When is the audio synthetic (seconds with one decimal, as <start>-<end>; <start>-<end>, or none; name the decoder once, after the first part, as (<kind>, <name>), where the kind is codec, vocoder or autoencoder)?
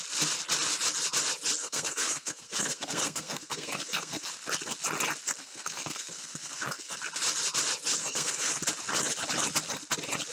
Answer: 1.6-4.3 (codec, SNAC); 5.4-7.0; 8.0-8.5